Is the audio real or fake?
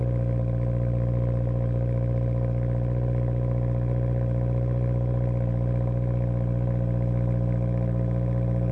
real